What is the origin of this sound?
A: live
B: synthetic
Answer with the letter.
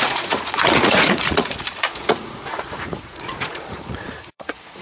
B